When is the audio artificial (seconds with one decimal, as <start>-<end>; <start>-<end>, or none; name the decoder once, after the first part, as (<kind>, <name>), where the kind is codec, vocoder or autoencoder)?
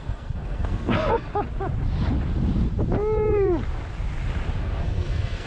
0.0-1.3 (codec, SNAC); 4.6-5.5